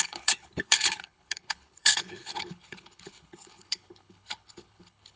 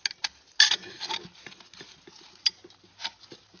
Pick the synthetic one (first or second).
first